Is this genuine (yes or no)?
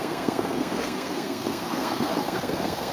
no